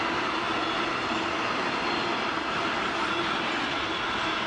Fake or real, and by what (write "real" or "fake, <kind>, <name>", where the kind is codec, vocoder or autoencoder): real